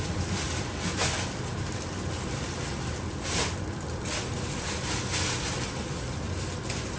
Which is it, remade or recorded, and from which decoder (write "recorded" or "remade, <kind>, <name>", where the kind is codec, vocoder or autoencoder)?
recorded